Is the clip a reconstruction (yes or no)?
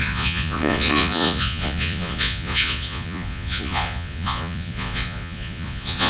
yes